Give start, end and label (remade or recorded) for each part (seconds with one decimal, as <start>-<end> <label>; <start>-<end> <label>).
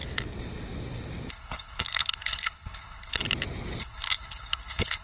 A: 0.0-1.3 recorded; 1.3-3.2 remade; 3.2-3.8 recorded; 3.8-5.0 remade